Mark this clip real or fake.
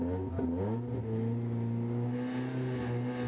real